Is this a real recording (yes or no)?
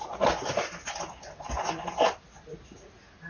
yes